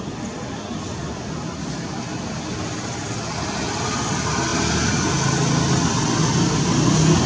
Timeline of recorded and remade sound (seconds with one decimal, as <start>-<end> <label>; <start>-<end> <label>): 0.0-7.3 recorded